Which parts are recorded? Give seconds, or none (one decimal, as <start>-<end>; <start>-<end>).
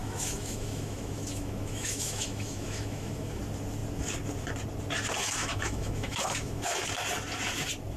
3.4-5.2; 6.8-8.0